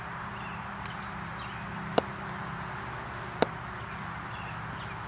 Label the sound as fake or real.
real